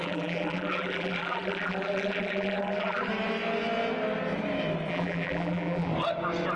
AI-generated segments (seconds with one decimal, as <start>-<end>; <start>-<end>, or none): 0.0-3.1; 4.9-5.9